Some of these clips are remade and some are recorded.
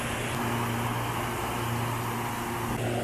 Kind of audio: recorded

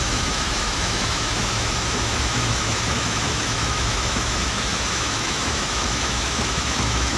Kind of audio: remade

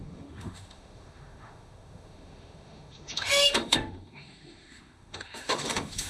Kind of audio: remade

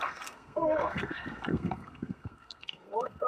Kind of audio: remade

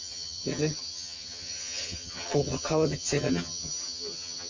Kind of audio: remade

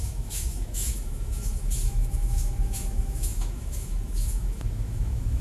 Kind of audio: remade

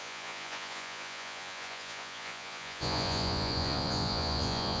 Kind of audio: remade